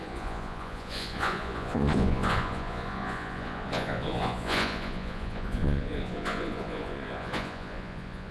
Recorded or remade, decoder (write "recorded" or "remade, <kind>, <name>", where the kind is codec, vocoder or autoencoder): remade, vocoder, Vocos